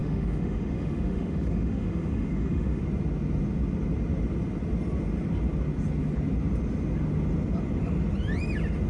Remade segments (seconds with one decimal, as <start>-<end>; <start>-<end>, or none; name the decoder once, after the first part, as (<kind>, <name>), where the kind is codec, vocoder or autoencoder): 0.0-2.8 (autoencoder, DAC-VAE)